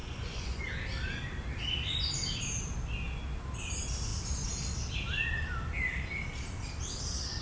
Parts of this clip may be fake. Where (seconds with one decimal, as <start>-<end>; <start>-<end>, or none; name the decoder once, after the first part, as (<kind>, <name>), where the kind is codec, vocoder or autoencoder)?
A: 0.0-0.6 (vocoder, Vocos)